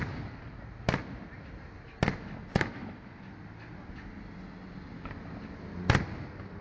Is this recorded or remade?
recorded